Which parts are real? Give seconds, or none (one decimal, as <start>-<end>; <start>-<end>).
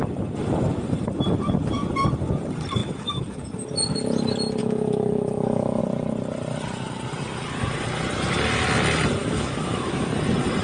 0.0-2.8; 3.3-4.6; 5.8-9.2; 10.1-10.6